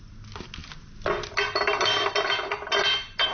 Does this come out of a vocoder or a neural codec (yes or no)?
no